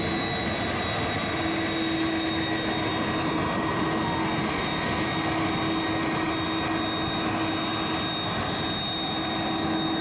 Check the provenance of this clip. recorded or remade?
recorded